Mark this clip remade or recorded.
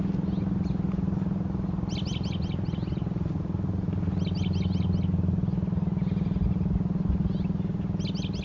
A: recorded